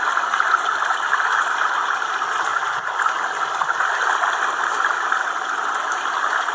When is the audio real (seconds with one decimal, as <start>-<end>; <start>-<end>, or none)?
0.0-6.5